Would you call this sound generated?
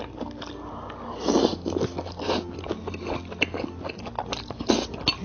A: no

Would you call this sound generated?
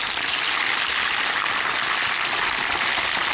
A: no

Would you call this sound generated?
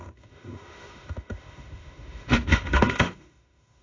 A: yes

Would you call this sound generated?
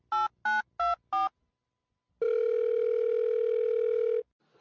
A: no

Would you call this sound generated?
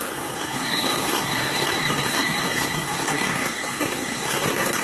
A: yes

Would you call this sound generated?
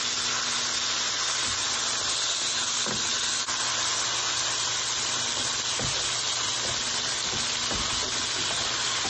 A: no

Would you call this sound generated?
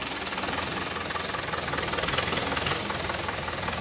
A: no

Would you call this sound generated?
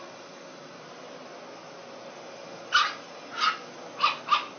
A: no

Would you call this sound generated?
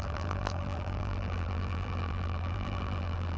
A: yes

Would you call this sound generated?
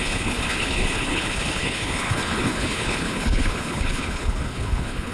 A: yes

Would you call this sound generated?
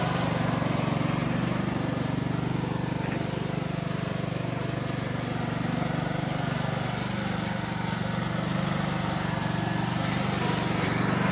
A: no